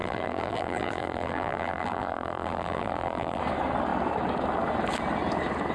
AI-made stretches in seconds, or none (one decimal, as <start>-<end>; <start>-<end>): 0.0-3.4